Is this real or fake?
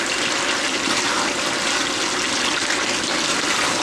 real